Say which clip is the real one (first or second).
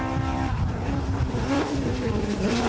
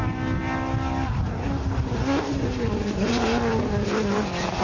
second